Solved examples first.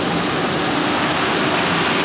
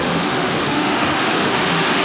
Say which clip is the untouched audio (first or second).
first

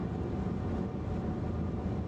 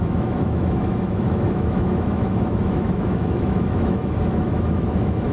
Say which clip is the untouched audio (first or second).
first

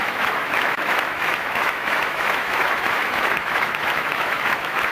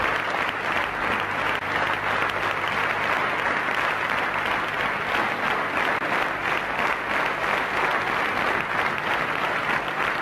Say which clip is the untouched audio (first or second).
second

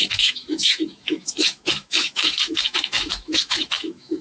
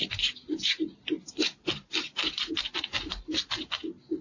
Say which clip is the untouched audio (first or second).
second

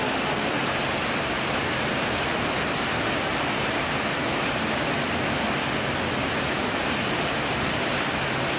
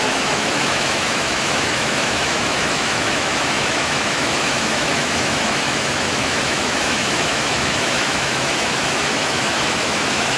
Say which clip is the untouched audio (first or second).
first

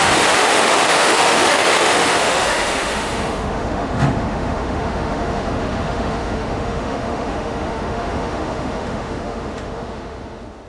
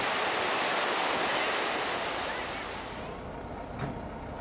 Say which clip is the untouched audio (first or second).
second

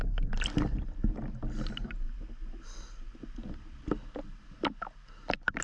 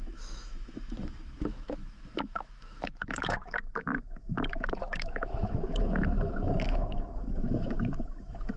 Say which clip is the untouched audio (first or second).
first